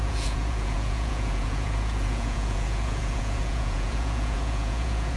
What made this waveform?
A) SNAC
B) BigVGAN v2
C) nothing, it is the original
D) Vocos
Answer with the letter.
D